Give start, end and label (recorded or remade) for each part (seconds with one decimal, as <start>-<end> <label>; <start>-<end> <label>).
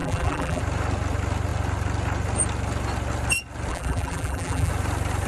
0.0-0.6 remade; 0.6-3.7 recorded; 3.7-4.7 remade; 4.7-5.3 recorded